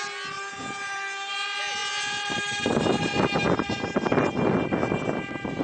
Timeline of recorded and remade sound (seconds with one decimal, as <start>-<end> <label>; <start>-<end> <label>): 0.0-5.6 recorded